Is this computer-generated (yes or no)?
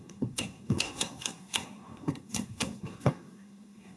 yes